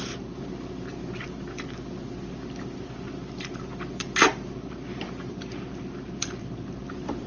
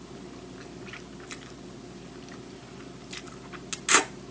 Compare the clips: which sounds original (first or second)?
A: second